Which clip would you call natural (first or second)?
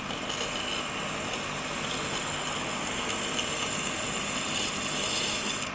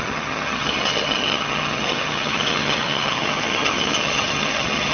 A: first